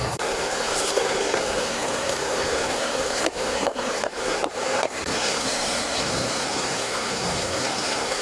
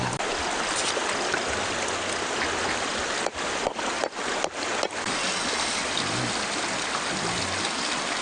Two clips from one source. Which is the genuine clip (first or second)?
second